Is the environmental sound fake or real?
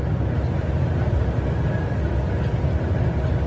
real